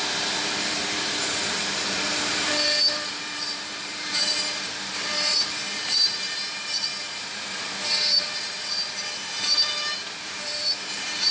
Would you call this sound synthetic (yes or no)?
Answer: yes